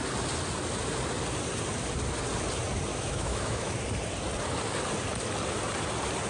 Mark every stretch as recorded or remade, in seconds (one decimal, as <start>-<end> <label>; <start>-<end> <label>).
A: 0.0-2.9 recorded; 2.9-3.7 remade; 3.7-6.3 recorded